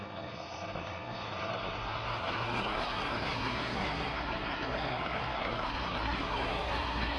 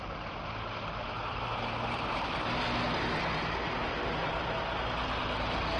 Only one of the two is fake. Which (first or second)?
first